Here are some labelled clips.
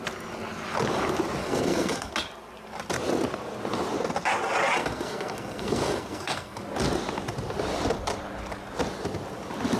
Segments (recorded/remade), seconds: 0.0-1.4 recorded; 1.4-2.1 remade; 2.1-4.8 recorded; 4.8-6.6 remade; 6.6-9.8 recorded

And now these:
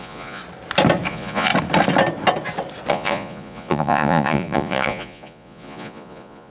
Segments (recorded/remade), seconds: 0.0-0.4 remade; 0.4-1.1 recorded; 1.1-1.5 remade; 1.5-2.9 recorded; 2.9-6.5 remade